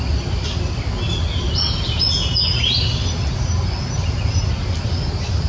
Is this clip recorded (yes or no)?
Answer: yes